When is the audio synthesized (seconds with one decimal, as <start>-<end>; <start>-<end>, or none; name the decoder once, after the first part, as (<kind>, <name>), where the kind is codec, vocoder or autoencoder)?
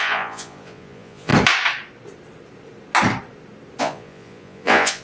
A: 0.0-1.3 (vocoder, Vocos); 3.8-5.0